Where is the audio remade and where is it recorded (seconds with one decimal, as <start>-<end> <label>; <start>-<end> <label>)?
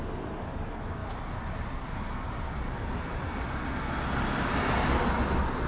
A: 0.0-5.7 recorded